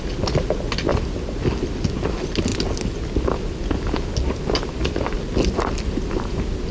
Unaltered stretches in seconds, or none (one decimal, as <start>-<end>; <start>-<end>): 0.0-6.7